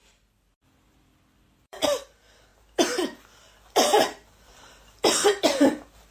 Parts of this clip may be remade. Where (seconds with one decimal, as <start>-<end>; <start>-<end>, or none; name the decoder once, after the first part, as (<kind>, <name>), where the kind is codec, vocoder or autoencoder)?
0.0-2.5 (vocoder, BigVGAN v2); 3.4-6.1